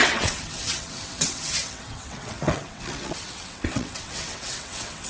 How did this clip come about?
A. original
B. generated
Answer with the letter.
B